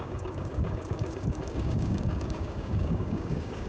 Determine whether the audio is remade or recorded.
remade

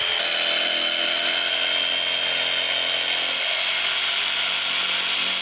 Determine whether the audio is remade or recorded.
recorded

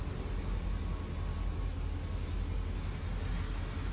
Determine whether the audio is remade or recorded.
recorded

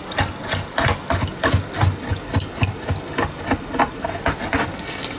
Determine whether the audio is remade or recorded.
recorded